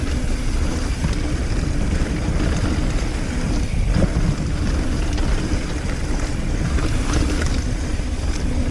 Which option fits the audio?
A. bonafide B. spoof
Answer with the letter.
A